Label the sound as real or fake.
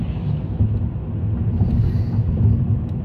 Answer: real